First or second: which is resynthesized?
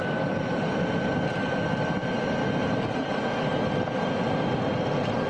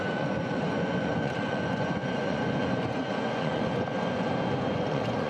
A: second